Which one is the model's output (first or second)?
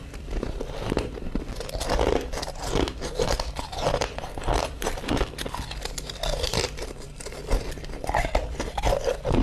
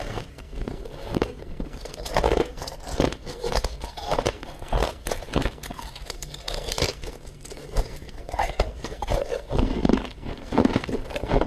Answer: second